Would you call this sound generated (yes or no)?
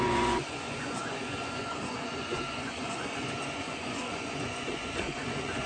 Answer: yes